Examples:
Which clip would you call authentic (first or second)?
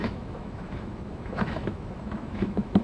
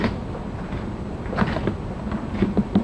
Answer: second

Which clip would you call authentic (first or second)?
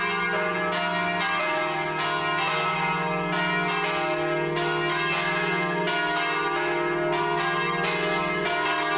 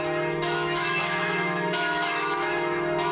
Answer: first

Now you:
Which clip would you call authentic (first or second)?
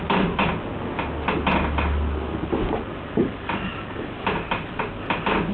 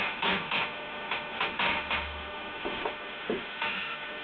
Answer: first